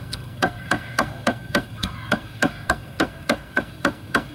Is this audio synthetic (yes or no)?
yes